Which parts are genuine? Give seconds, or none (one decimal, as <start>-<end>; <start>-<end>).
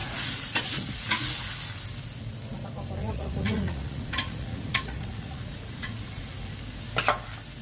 1.3-3.0; 6.2-7.6